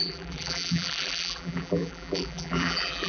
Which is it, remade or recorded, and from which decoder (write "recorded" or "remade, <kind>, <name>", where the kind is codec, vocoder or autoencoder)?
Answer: remade, vocoder, BigVGAN v2